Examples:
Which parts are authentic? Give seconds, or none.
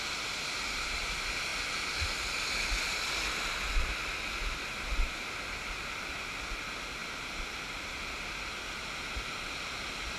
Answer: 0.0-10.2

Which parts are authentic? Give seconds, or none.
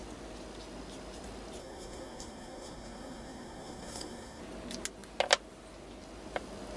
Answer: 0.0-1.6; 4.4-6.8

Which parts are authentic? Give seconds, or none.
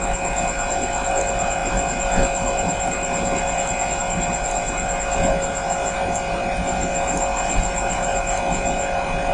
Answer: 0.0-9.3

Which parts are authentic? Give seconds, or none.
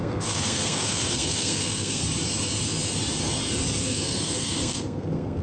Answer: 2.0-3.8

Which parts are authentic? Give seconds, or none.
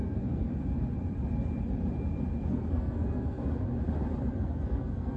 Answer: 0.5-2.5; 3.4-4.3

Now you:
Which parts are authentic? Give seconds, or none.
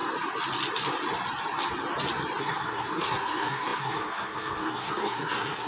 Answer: 0.0-2.4